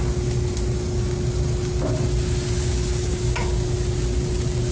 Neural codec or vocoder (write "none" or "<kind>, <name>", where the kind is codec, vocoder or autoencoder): none